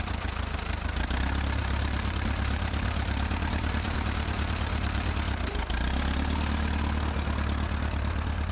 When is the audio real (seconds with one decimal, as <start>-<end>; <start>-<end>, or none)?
0.0-1.6; 5.1-8.5